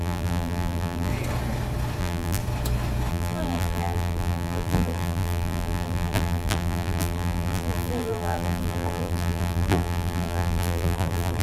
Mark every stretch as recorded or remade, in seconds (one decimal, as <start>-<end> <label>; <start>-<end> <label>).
0.0-1.1 remade; 1.1-2.0 recorded; 2.0-2.4 remade; 2.4-3.1 recorded; 3.1-11.4 remade